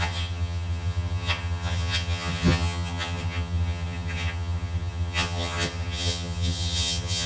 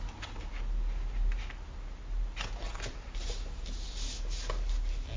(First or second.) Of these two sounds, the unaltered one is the second